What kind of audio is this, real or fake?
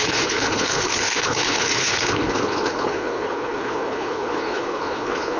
fake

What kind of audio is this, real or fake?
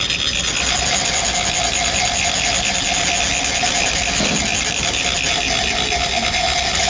real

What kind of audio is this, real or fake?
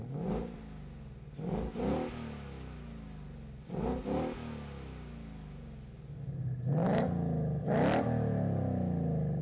real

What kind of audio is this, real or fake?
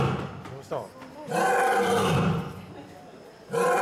real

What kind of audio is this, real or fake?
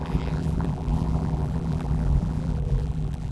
fake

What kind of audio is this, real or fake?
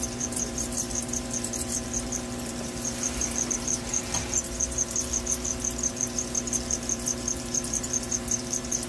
fake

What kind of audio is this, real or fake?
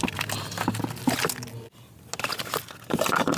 real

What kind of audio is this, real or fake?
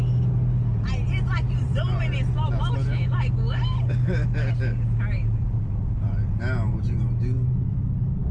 real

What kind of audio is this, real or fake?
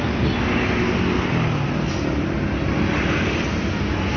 real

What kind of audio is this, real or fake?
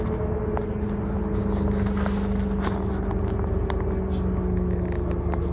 real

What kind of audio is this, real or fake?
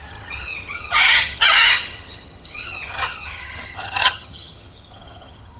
fake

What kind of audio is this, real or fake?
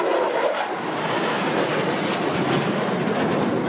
real